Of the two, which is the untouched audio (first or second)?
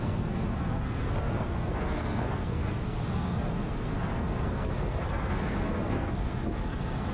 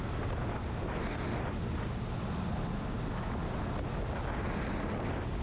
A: second